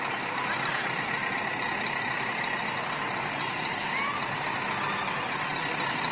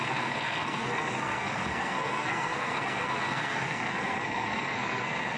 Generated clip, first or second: second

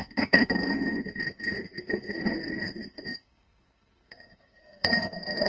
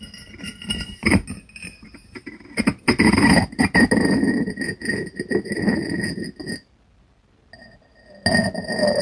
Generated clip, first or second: first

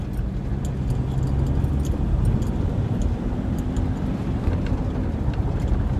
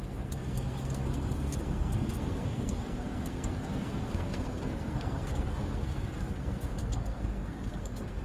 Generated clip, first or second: second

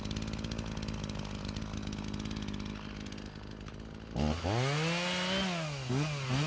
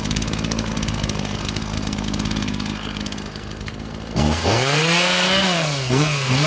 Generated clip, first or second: second